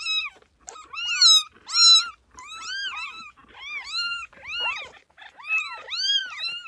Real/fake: real